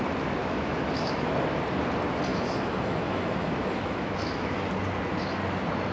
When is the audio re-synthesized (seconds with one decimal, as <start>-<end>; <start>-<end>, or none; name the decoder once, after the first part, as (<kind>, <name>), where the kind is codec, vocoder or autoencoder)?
0.4-1.3 (autoencoder, DAC-VAE); 2.3-4.7